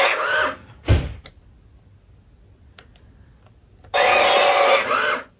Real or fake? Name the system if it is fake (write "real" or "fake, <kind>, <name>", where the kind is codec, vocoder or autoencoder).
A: real